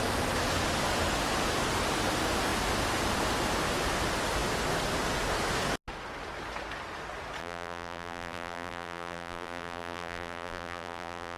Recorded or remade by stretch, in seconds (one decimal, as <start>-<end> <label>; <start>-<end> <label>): 0.0-7.4 recorded; 7.4-11.4 remade